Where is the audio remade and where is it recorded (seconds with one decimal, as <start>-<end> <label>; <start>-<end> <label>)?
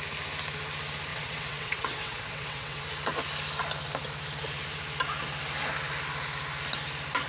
0.0-1.1 recorded; 1.1-2.8 remade; 2.8-7.3 recorded